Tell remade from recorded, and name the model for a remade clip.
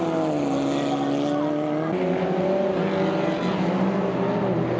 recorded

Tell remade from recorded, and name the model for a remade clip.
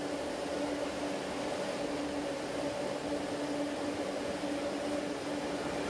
recorded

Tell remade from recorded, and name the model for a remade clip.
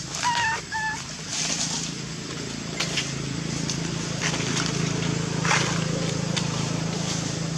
recorded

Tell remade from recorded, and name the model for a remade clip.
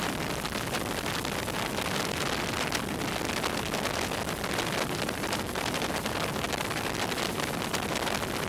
remade, vocoder, BigVGAN v2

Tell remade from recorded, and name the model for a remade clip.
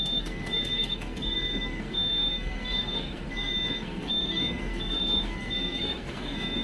remade, codec, SNAC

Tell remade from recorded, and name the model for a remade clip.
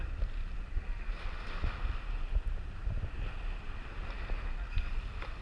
recorded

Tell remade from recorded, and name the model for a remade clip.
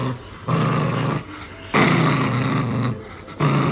recorded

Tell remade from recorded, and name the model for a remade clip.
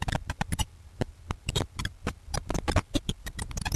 remade, vocoder, BigVGAN v2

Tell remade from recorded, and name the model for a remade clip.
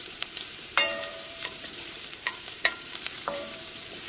remade, vocoder, BigVGAN v2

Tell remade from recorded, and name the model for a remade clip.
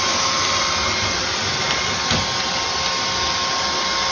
recorded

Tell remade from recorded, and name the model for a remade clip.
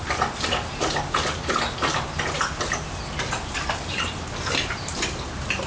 recorded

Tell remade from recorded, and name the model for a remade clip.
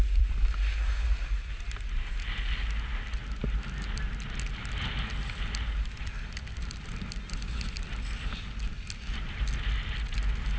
recorded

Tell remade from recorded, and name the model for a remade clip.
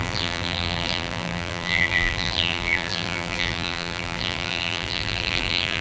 remade, vocoder, BigVGAN v2